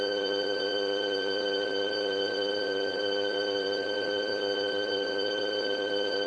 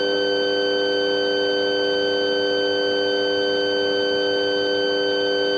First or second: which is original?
second